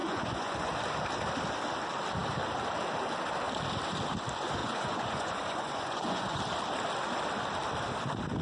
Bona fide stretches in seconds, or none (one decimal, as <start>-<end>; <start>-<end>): 0.7-4.6; 6.4-8.4